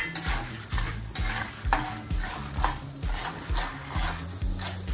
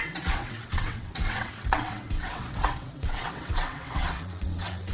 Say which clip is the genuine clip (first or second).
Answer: first